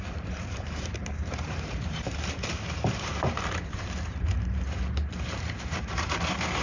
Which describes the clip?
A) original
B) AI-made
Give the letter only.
B